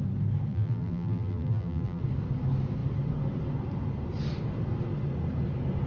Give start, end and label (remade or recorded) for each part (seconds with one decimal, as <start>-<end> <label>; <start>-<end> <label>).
0.0-0.5 recorded; 0.5-2.0 remade; 2.0-5.9 recorded